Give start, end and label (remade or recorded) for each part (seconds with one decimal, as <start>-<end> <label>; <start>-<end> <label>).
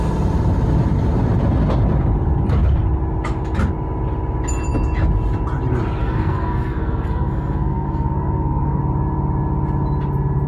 0.0-6.0 recorded; 6.0-8.8 remade; 8.8-10.5 recorded